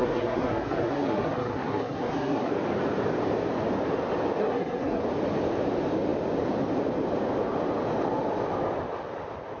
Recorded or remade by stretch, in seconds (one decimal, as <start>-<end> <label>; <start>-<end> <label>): 0.0-2.5 remade; 2.5-4.4 recorded; 4.4-5.0 remade; 5.0-9.6 recorded